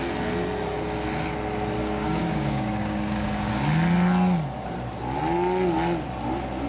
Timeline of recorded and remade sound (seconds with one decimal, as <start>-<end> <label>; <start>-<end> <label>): 0.0-1.8 recorded; 1.8-3.5 remade; 3.5-6.7 recorded